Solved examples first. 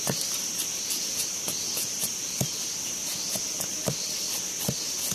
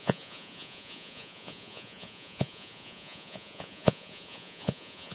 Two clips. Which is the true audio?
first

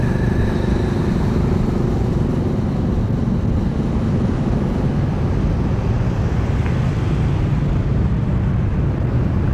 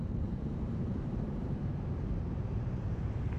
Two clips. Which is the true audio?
first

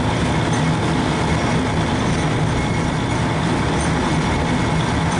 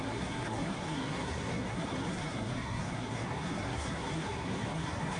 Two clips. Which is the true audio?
first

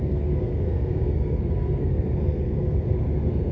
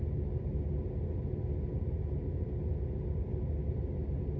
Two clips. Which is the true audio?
second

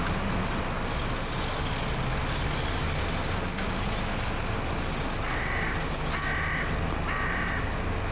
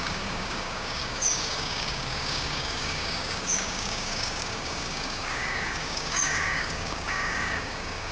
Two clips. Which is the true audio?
first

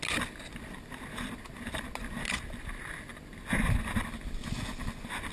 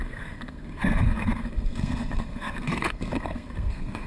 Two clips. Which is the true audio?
first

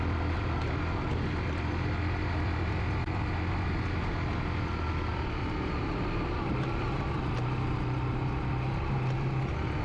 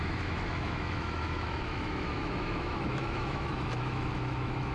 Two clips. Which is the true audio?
first